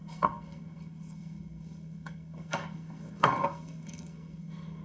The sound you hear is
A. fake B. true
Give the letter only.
A